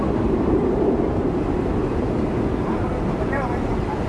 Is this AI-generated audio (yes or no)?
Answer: no